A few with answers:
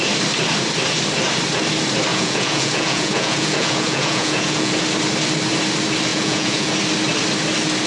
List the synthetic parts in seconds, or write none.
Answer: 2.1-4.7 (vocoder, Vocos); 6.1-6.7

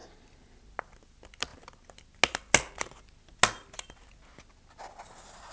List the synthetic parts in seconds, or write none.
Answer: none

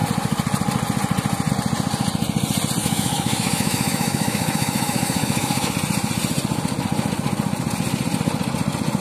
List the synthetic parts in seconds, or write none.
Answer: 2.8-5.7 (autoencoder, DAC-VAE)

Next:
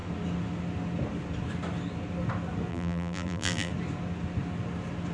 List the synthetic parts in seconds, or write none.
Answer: 2.7-3.7 (vocoder, BigVGAN v2)